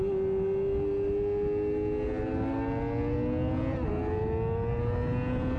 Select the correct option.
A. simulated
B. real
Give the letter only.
B